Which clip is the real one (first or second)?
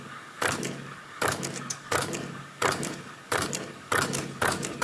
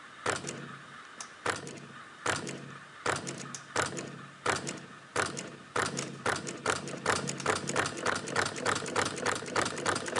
second